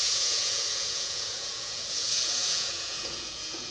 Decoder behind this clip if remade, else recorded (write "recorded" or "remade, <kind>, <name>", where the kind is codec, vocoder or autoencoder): remade, vocoder, Vocos